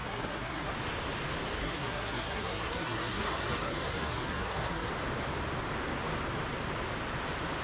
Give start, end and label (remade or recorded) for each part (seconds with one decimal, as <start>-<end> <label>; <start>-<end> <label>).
0.0-0.7 remade; 0.7-1.6 recorded; 1.6-4.9 remade; 4.9-7.6 recorded